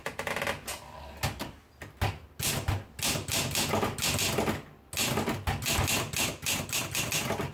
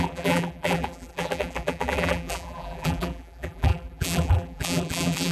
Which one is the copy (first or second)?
second